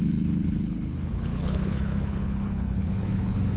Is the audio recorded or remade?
remade